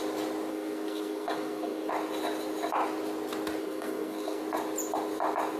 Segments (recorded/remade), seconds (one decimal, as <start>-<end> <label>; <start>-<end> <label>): 0.0-0.5 recorded; 0.5-1.9 remade; 1.9-3.6 recorded; 3.6-4.4 remade; 4.4-5.6 recorded